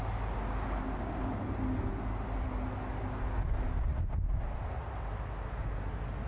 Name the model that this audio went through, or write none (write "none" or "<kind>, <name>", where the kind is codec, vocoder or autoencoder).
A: none